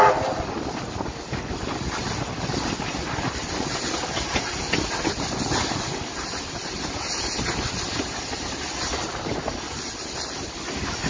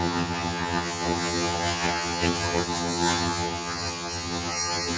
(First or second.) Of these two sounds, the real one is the first